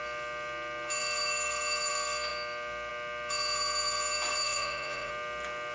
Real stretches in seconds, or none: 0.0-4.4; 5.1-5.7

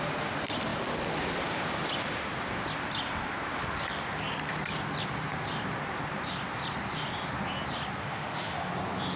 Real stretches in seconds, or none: 0.0-8.0; 8.7-9.2

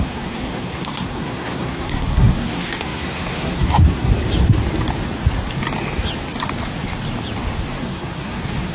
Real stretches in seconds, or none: 4.1-7.7

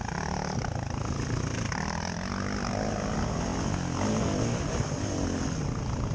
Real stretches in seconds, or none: 0.0-6.1